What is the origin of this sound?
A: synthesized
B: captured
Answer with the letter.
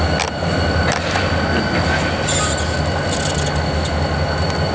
B